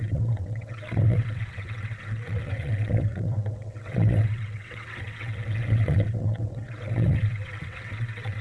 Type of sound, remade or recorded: remade